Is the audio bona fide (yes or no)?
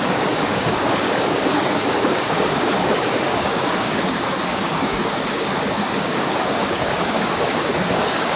no